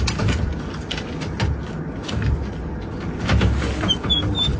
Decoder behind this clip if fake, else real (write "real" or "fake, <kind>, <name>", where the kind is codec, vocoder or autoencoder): real